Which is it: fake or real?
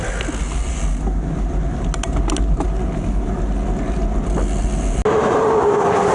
real